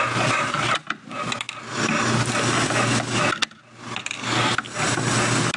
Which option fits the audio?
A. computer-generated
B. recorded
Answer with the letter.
B